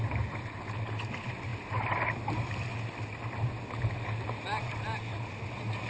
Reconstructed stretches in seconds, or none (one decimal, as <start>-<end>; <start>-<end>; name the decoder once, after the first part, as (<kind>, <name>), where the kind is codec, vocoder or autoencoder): none